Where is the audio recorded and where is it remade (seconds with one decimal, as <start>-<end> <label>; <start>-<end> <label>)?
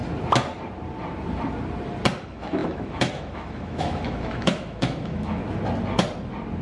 0.0-2.2 recorded; 2.2-5.4 remade; 5.4-6.6 recorded